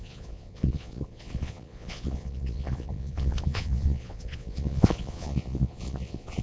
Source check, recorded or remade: remade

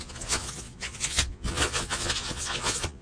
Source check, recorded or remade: remade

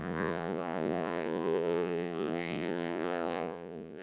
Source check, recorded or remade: remade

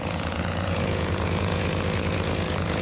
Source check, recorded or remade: remade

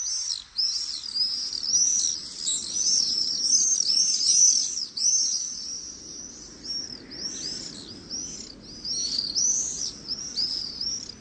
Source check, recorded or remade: recorded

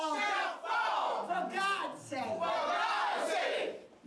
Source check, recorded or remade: recorded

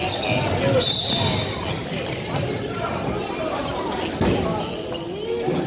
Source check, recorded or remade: recorded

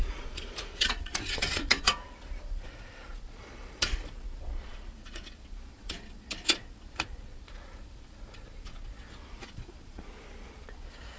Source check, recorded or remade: remade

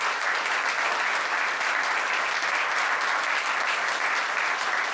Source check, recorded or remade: recorded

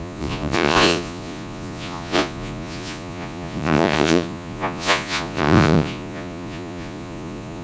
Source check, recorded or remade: remade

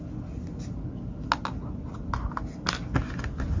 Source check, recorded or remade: recorded